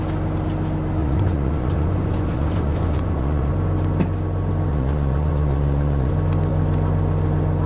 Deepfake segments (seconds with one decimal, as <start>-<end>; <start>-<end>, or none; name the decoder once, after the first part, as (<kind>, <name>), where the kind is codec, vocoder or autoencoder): 1.0-3.5 (vocoder, Vocos); 4.7-6.1